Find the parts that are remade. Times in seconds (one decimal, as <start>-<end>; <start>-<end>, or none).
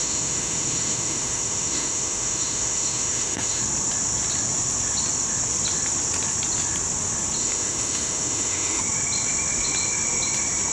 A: 0.0-3.6; 7.4-8.8